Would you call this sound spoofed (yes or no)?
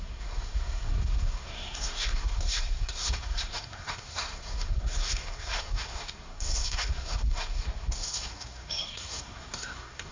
yes